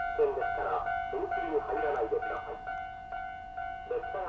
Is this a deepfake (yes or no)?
no